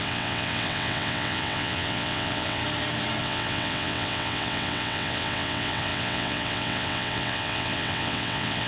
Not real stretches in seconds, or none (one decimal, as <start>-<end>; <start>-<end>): 0.0-2.6; 3.2-8.7